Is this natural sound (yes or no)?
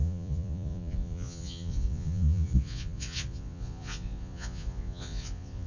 no